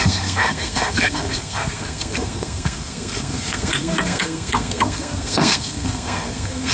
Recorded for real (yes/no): no